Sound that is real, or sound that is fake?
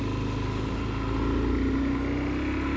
real